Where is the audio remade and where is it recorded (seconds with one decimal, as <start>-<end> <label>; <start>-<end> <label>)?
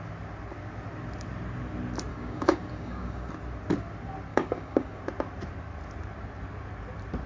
0.0-2.1 recorded; 2.1-3.3 remade; 3.3-4.3 recorded; 4.3-5.0 remade; 5.0-7.3 recorded